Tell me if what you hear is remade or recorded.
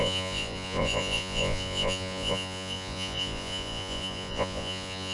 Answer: remade